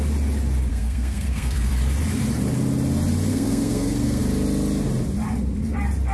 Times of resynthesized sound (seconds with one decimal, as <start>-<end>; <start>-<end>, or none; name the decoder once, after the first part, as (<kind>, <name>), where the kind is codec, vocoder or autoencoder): 0.7-1.7 (codec, SNAC); 3.3-4.2